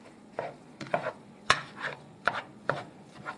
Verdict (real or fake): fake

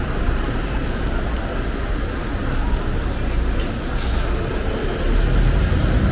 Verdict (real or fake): real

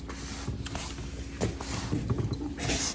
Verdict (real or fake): real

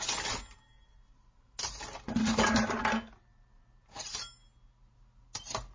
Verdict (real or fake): real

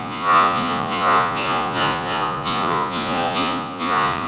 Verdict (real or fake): fake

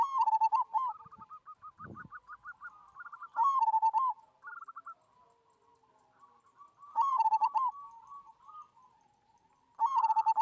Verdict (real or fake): real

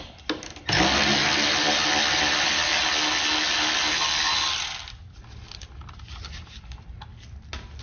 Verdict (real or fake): real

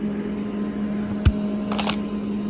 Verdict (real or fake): real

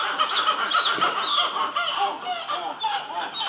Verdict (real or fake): real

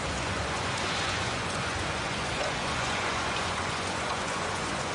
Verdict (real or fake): fake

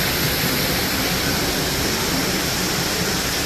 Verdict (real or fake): real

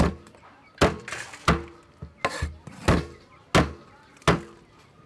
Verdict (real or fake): real